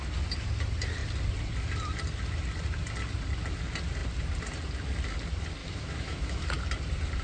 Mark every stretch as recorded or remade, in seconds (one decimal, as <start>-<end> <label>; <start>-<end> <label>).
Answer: 0.0-5.6 recorded; 5.6-6.4 remade; 6.4-7.2 recorded